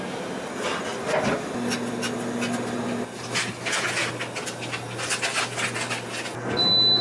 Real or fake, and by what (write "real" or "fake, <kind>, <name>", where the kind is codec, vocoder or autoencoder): real